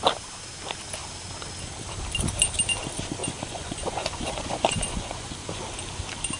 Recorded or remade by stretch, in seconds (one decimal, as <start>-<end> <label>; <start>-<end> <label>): 0.0-3.2 recorded; 3.2-5.6 remade; 5.6-6.4 recorded